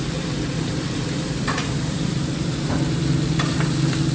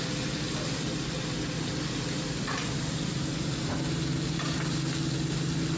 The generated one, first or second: first